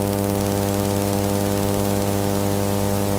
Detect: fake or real real